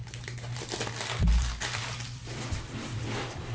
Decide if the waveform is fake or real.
fake